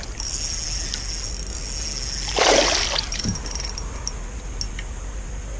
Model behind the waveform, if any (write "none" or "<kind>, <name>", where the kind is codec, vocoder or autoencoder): none